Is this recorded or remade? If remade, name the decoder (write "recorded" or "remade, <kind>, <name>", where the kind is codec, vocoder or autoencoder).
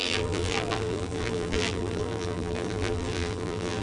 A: remade, vocoder, BigVGAN v2